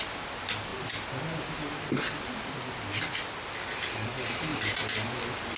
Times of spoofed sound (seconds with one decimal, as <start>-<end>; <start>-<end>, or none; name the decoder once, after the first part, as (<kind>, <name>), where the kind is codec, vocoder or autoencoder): none